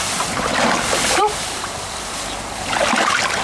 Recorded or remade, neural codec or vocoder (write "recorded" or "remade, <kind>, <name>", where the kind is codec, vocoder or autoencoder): recorded